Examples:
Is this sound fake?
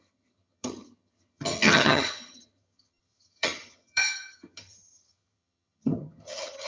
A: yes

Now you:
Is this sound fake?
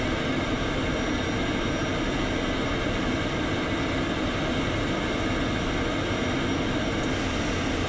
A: no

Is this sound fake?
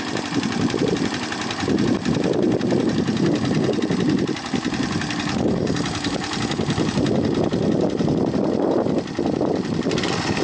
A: no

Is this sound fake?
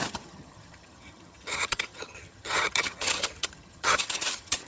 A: yes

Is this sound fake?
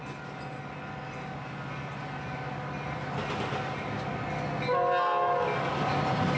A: no